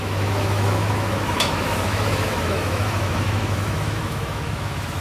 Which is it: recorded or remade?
remade